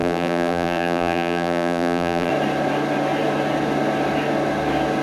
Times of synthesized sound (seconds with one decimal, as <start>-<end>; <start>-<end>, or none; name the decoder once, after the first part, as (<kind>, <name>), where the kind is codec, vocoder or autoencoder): 0.0-2.3 (vocoder, BigVGAN v2)